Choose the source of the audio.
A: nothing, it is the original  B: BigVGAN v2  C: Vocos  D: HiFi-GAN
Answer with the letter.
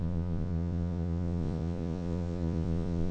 C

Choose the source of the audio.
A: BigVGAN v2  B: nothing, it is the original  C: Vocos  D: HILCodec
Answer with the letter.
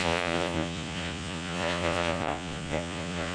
C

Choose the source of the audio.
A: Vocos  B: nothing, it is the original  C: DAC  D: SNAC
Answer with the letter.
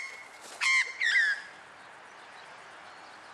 B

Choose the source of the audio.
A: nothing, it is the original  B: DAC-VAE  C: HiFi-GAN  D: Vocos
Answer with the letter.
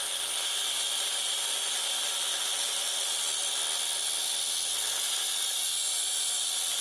A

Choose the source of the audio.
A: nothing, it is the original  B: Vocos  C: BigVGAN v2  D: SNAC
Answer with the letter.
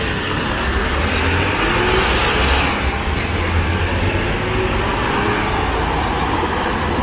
A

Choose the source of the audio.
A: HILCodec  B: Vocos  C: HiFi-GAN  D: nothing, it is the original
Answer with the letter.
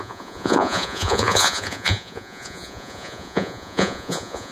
B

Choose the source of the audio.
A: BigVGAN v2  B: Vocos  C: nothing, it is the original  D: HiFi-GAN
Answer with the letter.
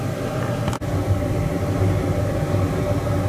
C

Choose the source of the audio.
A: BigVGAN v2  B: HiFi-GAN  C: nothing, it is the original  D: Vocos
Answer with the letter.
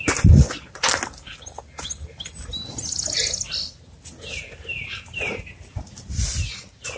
C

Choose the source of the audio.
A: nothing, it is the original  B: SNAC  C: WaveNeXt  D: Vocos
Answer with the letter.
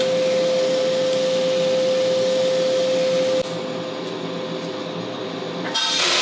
A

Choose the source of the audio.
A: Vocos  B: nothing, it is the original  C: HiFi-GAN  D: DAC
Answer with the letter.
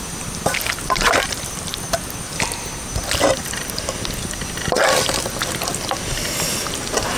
B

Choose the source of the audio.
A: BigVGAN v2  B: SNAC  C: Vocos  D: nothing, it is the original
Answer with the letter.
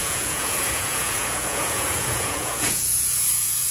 C